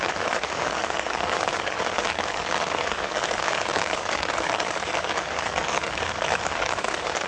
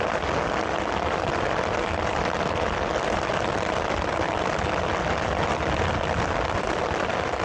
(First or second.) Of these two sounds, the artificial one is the first